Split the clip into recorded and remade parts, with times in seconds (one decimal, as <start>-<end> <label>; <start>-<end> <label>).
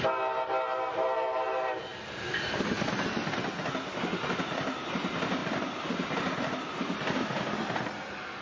0.0-8.4 recorded